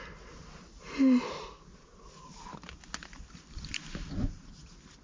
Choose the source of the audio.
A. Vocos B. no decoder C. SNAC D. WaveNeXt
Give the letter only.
B